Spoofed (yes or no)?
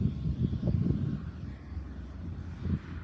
no